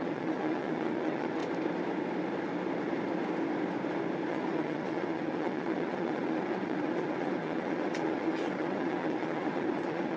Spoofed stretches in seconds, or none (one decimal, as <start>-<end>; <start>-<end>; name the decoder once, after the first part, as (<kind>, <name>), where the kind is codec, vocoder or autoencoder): 0.0-1.4 (vocoder, WaveNeXt); 4.3-10.2